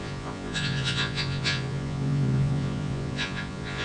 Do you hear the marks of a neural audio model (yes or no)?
yes